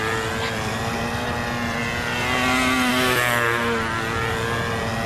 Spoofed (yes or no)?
no